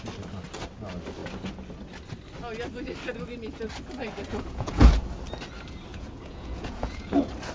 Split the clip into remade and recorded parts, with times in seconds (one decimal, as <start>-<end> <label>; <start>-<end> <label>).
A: 0.0-4.3 recorded; 4.3-4.8 remade; 4.8-5.9 recorded; 5.9-7.1 remade; 7.1-7.5 recorded